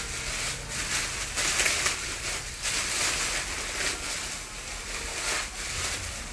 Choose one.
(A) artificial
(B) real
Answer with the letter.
B